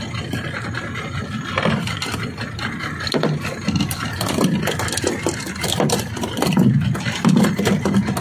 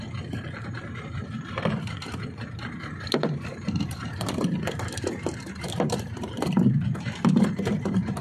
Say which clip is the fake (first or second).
second